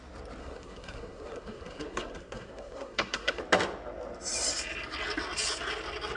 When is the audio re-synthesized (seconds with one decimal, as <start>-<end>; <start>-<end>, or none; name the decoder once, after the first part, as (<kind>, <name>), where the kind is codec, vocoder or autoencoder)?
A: 0.4-3.4 (codec, SNAC)